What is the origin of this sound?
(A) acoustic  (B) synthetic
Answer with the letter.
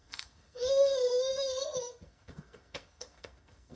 B